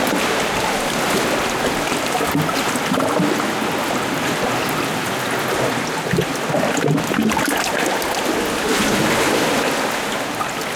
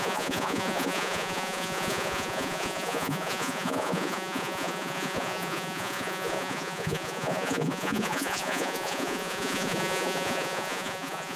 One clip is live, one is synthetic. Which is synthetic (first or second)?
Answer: second